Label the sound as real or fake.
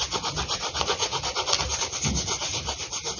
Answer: real